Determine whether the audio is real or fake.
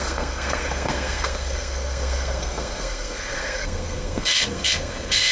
fake